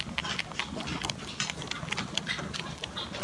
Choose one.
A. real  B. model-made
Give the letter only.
A